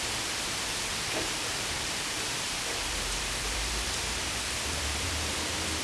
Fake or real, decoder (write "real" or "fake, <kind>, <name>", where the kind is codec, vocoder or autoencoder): fake, vocoder, BigVGAN v2